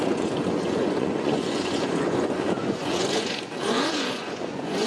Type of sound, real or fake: fake